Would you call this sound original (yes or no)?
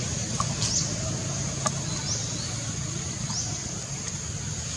yes